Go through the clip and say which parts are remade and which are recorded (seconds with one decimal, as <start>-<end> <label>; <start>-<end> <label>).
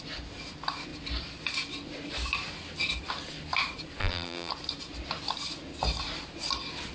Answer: 0.0-4.0 recorded; 4.0-4.5 remade; 4.5-6.9 recorded